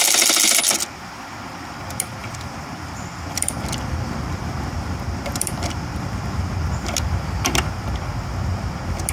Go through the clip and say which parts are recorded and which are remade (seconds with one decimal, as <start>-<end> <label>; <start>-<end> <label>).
0.0-2.2 recorded; 2.2-6.5 remade; 6.5-9.1 recorded